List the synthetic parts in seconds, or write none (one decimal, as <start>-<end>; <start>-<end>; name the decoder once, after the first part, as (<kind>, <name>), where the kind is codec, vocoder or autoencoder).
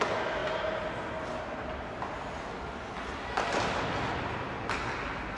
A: none